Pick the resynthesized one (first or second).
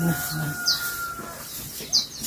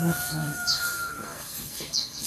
second